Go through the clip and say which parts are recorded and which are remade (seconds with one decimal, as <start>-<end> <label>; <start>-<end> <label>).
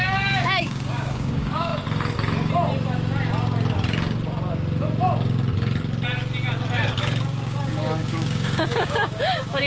0.0-1.7 remade; 1.7-7.0 recorded; 7.0-9.7 remade